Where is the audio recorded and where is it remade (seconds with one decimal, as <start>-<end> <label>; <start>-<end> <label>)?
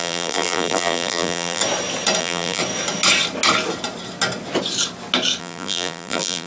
0.0-1.6 remade; 1.6-2.2 recorded; 2.2-2.6 remade; 2.6-5.4 recorded; 5.4-6.5 remade